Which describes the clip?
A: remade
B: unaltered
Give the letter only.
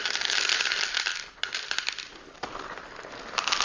B